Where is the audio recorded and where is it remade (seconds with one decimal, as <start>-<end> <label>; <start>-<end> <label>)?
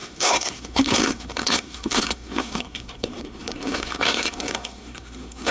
0.0-5.5 remade